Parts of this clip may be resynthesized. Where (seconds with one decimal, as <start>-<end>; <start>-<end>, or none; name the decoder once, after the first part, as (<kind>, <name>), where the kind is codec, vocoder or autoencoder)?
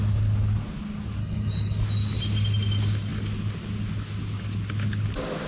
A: 1.2-1.8 (codec, HILCodec)